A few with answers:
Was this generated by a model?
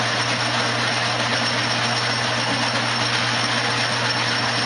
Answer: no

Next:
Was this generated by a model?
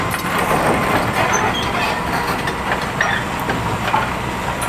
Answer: yes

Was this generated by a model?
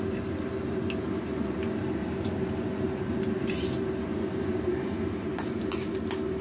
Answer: no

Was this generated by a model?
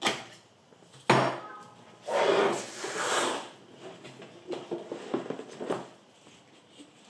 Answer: no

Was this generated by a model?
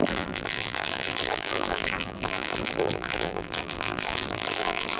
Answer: yes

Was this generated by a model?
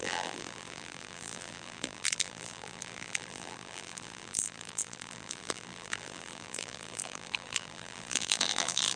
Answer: yes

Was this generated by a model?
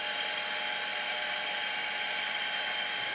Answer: yes